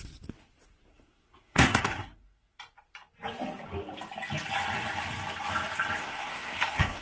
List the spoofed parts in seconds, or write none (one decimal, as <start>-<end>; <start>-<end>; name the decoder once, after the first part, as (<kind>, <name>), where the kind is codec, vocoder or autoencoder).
0.9-2.6 (codec, SNAC); 6.0-7.0